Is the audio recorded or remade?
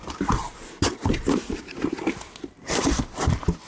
remade